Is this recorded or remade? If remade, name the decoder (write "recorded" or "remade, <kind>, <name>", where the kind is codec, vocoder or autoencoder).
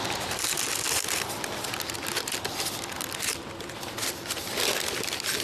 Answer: recorded